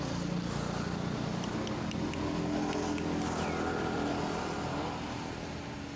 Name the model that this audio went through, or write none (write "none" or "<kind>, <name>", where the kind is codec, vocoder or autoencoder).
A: none